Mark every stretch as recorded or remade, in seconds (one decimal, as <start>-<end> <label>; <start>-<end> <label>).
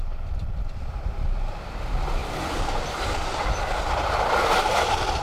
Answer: 0.0-5.2 recorded